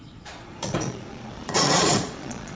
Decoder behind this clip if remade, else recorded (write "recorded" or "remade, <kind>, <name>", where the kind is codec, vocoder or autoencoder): remade, vocoder, Vocos